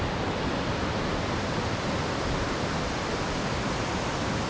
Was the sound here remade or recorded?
recorded